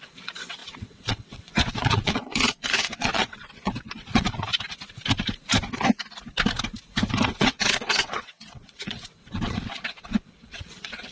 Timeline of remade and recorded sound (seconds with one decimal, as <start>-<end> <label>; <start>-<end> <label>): 0.0-4.5 remade; 4.5-7.1 recorded; 7.1-11.1 remade